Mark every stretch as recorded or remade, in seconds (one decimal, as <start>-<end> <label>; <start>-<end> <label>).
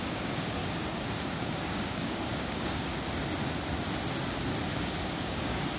0.0-0.6 remade; 0.6-1.4 recorded; 1.4-2.9 remade; 2.9-5.0 recorded; 5.0-5.8 remade